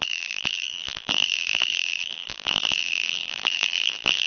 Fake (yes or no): yes